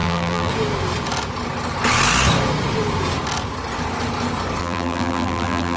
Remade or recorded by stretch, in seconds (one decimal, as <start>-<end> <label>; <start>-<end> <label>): 0.0-0.5 remade; 0.5-4.6 recorded; 4.6-5.8 remade